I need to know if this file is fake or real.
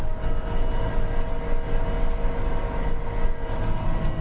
real